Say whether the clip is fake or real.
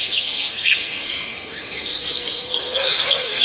fake